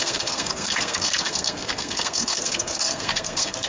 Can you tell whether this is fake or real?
fake